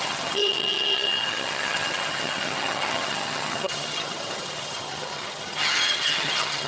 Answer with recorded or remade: remade